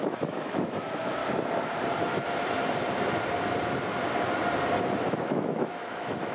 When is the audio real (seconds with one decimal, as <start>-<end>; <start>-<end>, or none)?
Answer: 1.2-5.0

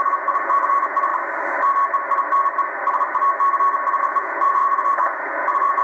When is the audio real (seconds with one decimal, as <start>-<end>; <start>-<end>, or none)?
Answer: 1.1-4.0

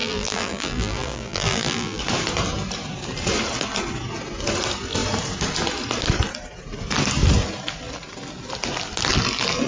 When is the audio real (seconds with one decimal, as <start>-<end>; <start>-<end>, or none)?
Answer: 2.0-9.7

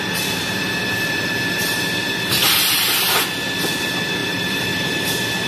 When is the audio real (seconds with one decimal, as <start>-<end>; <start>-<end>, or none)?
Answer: 0.0-0.4; 2.5-4.2; 5.1-5.5

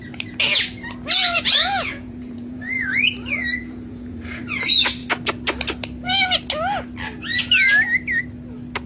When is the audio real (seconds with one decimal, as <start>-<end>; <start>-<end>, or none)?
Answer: 0.0-1.2; 3.0-3.6; 4.4-8.9

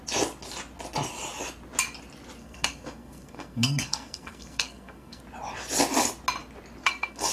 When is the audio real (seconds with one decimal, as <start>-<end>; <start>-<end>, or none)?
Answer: 0.0-2.4; 5.2-6.8

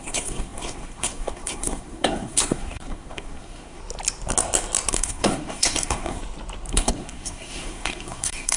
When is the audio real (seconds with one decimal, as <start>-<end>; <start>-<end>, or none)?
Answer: 3.8-4.9; 6.2-6.7